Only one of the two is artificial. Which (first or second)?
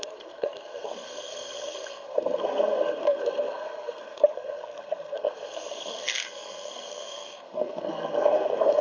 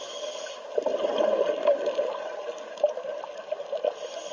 first